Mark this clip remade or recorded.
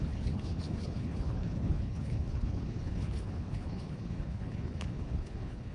remade